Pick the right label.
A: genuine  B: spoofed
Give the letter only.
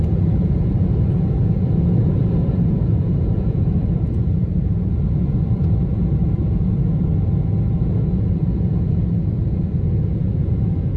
B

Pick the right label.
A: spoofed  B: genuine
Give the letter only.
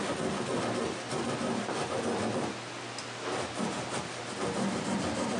B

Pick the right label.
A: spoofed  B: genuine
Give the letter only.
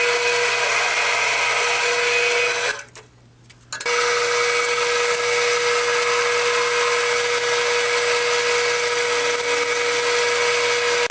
B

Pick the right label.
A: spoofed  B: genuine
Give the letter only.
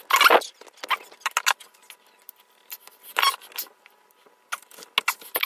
B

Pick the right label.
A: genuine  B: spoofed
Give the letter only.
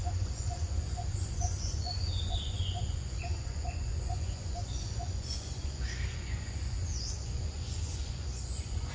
B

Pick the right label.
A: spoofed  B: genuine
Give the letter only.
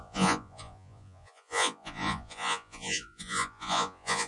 A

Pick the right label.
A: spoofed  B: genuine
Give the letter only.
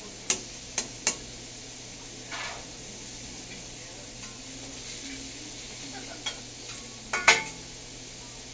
B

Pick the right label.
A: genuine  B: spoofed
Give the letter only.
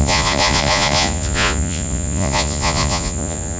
B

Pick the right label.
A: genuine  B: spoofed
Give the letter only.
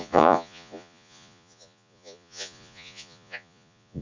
B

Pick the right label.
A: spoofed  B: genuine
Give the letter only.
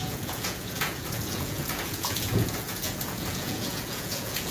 A